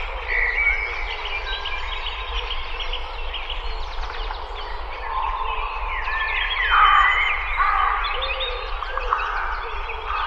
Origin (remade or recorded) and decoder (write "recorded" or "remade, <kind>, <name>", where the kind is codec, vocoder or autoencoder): recorded